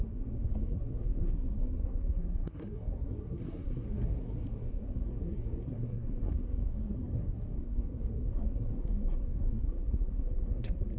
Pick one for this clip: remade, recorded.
remade